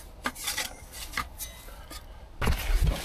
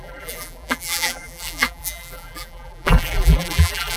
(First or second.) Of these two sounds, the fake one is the second